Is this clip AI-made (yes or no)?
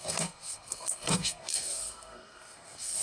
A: yes